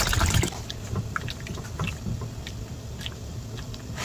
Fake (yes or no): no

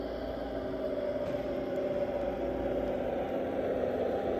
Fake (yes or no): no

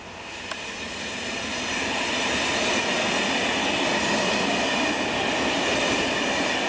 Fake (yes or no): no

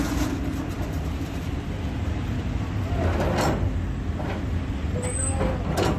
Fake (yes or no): no